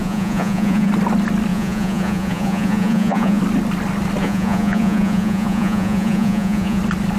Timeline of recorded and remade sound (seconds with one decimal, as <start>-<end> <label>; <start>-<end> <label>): 0.0-0.9 remade; 0.9-1.5 recorded; 1.5-3.4 remade; 3.4-4.2 recorded; 4.2-6.8 remade; 6.8-7.2 recorded